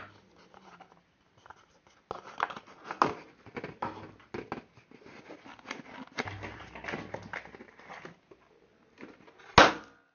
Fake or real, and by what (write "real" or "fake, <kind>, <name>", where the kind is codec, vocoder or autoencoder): real